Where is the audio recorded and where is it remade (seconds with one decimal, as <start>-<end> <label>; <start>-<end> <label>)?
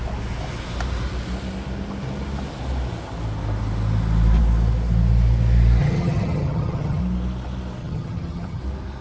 0.0-5.8 recorded; 5.8-7.0 remade; 7.0-7.8 recorded; 7.8-8.6 remade; 8.6-9.0 recorded